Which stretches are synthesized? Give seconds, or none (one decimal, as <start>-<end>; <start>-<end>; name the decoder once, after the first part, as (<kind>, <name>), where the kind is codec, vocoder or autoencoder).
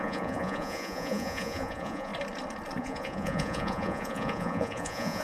0.0-2.1 (vocoder, Vocos); 2.8-5.2